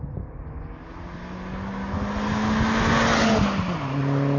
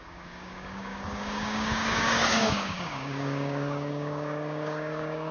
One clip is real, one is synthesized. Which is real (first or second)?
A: first